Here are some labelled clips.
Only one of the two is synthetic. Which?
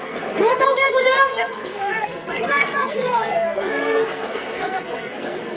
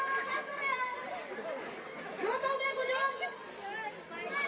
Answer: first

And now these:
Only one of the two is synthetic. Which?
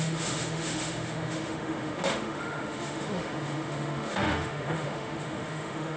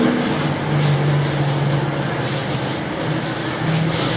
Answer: first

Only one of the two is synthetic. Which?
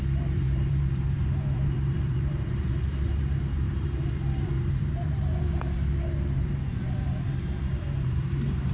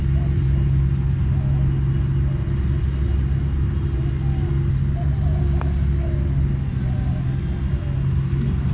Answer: first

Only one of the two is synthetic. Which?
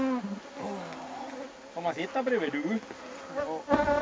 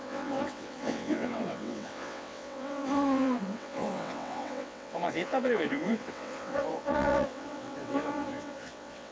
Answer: second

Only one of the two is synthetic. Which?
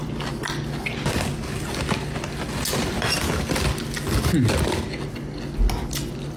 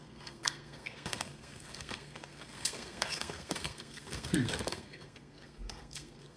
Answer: second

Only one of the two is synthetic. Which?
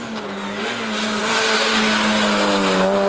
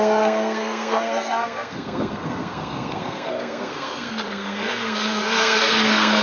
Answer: second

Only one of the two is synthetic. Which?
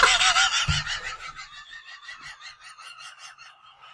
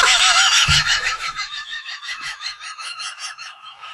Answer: second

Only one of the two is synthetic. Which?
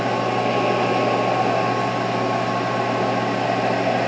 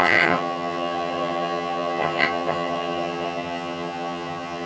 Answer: second